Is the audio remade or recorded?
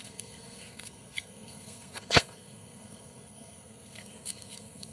remade